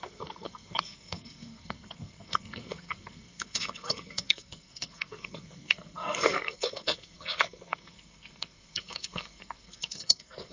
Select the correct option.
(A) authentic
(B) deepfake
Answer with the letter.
B